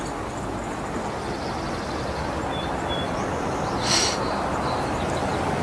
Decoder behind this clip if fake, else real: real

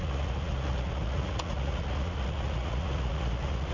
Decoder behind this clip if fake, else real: fake, vocoder, Vocos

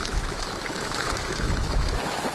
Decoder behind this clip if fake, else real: fake, autoencoder, DAC-VAE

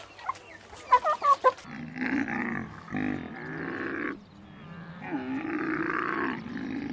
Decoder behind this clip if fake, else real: real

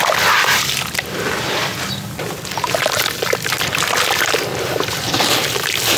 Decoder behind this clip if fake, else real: real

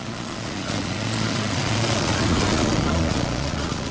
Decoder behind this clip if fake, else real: fake, vocoder, Vocos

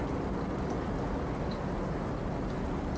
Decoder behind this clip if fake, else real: real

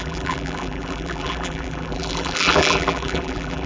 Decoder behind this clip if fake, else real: fake, vocoder, BigVGAN v2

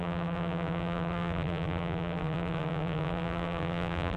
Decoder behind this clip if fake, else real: fake, vocoder, BigVGAN v2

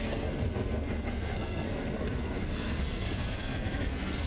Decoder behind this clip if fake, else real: fake, codec, SNAC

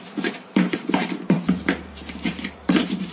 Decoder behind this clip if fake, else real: fake, vocoder, BigVGAN v2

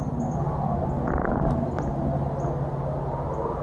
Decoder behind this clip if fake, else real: real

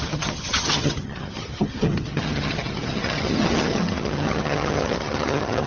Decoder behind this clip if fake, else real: fake, vocoder, HiFi-GAN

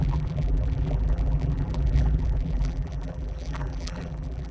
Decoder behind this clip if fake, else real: fake, vocoder, BigVGAN v2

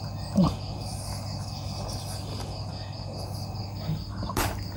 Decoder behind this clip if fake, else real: real